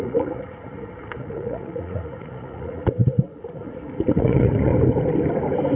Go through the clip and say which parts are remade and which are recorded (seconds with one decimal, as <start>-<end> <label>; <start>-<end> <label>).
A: 0.0-4.7 remade; 4.7-5.8 recorded